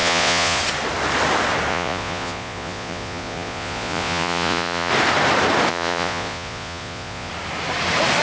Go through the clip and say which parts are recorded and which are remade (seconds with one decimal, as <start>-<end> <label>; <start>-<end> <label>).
0.0-0.6 remade; 0.6-1.7 recorded; 1.7-4.9 remade; 4.9-5.7 recorded; 5.7-7.3 remade; 7.3-8.2 recorded